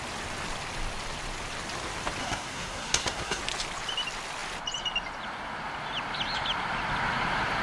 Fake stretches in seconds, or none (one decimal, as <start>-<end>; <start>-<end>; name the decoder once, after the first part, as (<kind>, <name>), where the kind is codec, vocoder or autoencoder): 2.2-3.4 (codec, SNAC)